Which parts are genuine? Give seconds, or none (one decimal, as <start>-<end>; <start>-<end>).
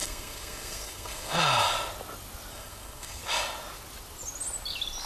1.4-2.5; 3.2-5.1